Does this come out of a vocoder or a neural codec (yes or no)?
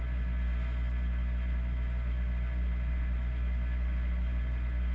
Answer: no